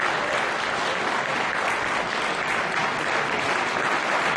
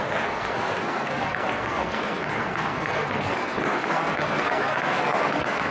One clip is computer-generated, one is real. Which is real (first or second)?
first